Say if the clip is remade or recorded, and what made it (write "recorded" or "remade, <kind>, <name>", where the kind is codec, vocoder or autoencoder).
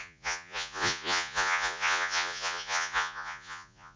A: remade, vocoder, Vocos